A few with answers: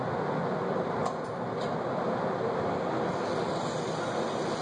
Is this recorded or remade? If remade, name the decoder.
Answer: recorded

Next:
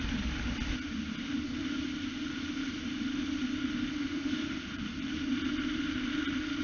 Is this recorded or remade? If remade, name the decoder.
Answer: remade, vocoder, BigVGAN v2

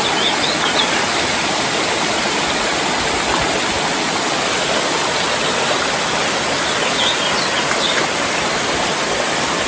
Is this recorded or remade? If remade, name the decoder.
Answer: recorded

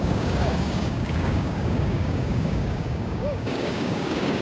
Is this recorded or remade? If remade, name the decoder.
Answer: remade, codec, DAC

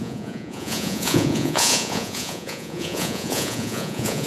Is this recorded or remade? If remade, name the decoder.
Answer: remade, vocoder, Vocos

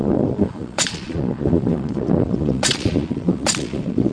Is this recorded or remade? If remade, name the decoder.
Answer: remade, vocoder, Vocos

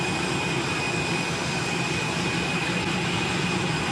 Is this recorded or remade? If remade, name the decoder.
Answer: recorded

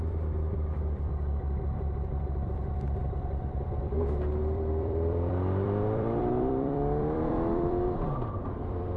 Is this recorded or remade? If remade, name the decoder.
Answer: remade, vocoder, BigVGAN v2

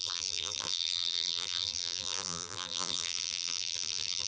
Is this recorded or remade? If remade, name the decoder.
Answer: remade, vocoder, BigVGAN v2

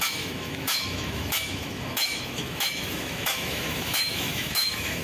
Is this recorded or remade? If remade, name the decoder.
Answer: remade, autoencoder, DAC-VAE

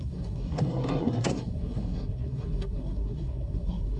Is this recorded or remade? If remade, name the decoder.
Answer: remade, codec, SNAC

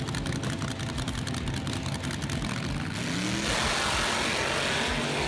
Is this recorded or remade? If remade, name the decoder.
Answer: recorded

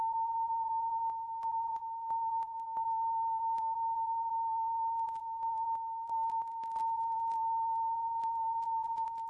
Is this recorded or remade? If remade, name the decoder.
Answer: remade, vocoder, BigVGAN v2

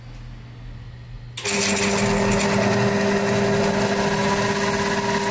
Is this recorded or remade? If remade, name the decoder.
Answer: recorded